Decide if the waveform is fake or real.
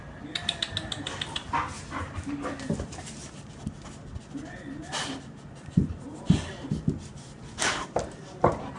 real